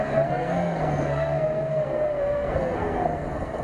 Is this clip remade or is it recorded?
remade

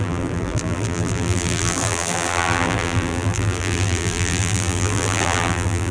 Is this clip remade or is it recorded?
remade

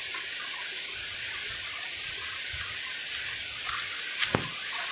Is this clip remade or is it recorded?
recorded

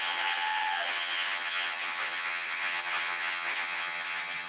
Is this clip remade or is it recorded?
remade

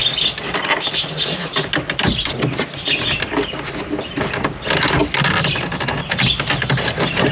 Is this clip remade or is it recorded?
recorded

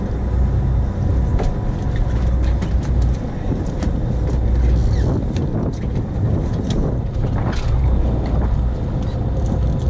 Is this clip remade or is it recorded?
recorded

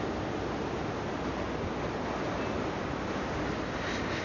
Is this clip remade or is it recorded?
recorded